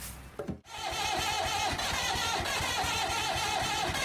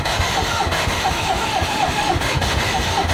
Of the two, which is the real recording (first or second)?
first